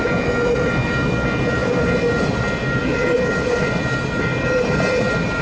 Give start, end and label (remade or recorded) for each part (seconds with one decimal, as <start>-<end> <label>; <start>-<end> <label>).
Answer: 0.0-5.4 recorded